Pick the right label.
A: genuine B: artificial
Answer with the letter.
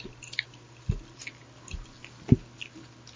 A